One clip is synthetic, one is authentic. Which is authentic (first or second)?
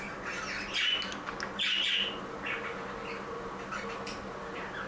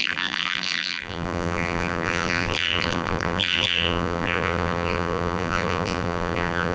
first